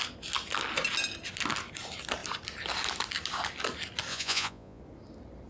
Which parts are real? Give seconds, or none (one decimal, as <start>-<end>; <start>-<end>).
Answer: 0.0-4.1; 4.8-5.5